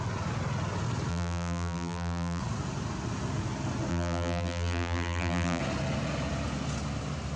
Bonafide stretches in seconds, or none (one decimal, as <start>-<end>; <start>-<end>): 0.0-1.1; 2.4-3.9; 5.6-7.4